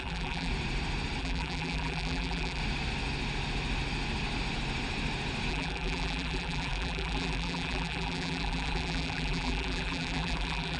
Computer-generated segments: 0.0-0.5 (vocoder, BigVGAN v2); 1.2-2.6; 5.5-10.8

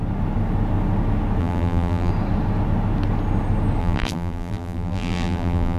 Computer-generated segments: 1.4-2.1 (vocoder, BigVGAN v2); 3.8-5.8

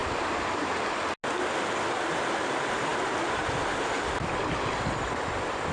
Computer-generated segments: 0.0-0.8 (vocoder, BigVGAN v2)

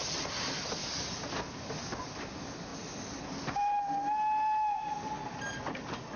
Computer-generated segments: none

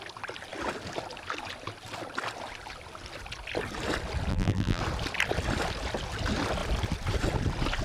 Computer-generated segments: 4.3-4.8 (vocoder, BigVGAN v2)

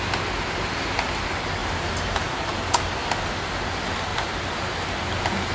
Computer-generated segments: 1.6-2.3 (vocoder, BigVGAN v2); 4.1-4.7